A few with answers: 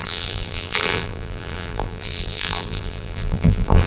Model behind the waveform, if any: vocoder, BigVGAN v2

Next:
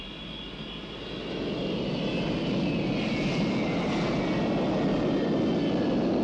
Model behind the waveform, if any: none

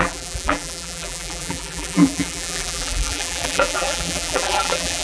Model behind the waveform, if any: vocoder, BigVGAN v2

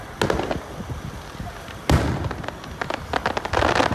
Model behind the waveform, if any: none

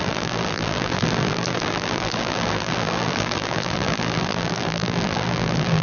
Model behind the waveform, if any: vocoder, BigVGAN v2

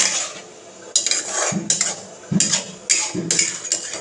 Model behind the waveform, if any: none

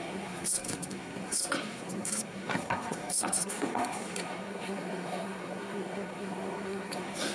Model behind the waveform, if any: codec, SNAC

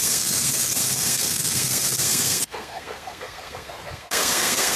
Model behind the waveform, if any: codec, SNAC